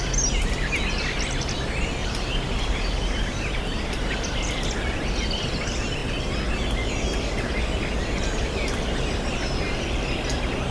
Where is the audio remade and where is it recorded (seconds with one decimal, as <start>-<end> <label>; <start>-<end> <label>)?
0.0-2.0 recorded; 2.0-2.8 remade; 2.8-9.3 recorded; 9.3-10.1 remade; 10.1-10.7 recorded